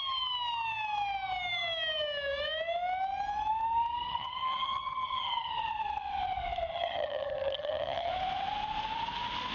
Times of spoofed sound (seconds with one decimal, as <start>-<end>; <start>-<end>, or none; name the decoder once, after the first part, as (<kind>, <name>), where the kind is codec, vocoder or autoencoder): 4.1-5.5 (vocoder, HiFi-GAN); 6.7-8.1